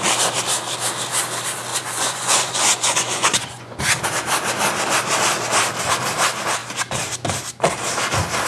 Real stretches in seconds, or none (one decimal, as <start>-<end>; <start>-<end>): 0.0-1.7; 3.8-8.5